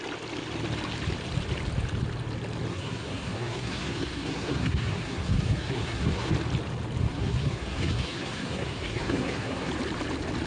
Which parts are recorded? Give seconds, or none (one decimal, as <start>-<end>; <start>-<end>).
0.0-2.7; 6.3-7.0; 9.7-10.5